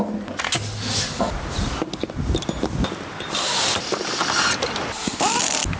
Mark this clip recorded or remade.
recorded